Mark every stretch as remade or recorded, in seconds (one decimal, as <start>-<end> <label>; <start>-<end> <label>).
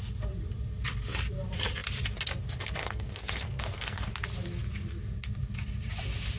0.0-2.8 recorded; 2.8-4.1 remade; 4.1-6.4 recorded